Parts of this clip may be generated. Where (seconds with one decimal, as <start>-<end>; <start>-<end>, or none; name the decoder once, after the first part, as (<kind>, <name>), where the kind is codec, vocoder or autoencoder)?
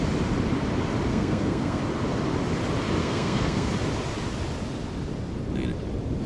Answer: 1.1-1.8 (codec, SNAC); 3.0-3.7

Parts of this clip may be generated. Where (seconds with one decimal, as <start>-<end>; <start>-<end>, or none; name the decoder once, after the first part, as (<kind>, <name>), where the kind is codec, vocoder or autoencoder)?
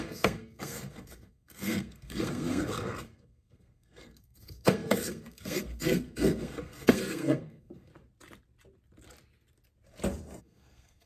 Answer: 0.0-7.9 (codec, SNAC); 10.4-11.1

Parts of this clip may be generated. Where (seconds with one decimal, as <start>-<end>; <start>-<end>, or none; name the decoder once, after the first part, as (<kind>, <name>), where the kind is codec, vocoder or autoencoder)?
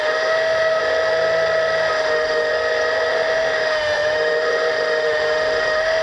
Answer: 0.0-0.8 (autoencoder, DAC-VAE); 1.9-2.5; 3.1-6.0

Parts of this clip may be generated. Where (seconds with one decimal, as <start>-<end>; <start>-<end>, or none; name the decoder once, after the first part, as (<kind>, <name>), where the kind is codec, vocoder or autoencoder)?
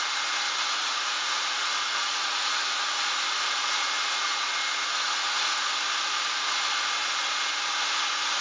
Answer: 0.8-5.7 (vocoder, Vocos)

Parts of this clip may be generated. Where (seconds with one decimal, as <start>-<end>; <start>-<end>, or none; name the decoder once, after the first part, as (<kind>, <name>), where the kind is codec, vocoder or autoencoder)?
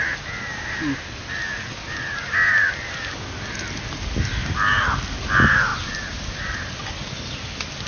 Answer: none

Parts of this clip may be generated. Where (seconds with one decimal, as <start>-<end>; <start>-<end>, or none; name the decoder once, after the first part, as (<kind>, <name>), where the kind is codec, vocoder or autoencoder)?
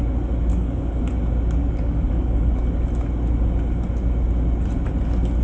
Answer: 0.5-1.0 (codec, DAC); 1.6-2.6